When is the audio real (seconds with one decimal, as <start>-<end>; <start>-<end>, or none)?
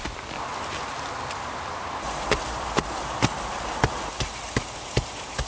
0.0-5.5